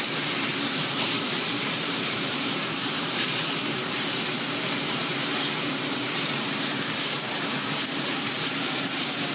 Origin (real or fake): fake